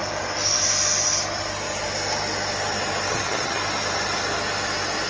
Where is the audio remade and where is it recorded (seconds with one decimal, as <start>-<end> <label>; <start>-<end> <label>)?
0.0-3.1 recorded; 3.1-3.6 remade; 3.6-5.1 recorded